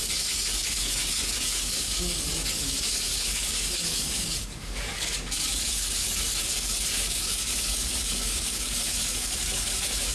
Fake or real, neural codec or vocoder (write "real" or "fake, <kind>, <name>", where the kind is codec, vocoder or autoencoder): fake, codec, DAC